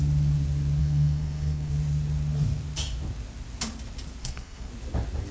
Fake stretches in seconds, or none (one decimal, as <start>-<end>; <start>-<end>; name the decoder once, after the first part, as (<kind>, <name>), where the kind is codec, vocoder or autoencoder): 0.8-1.7 (codec, SNAC); 4.2-4.7